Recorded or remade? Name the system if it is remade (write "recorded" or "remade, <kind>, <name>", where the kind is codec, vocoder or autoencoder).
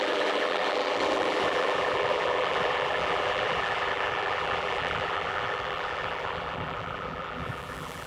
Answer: remade, vocoder, BigVGAN v2